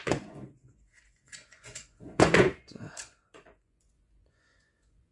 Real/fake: fake